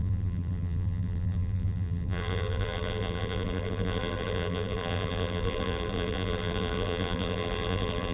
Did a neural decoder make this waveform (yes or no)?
yes